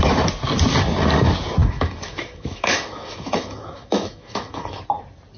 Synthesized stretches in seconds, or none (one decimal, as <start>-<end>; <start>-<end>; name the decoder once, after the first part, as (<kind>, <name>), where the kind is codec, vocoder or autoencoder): 1.6-4.8 (autoencoder, DAC-VAE)